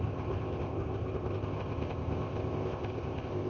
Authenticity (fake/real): fake